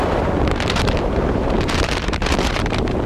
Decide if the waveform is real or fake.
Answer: fake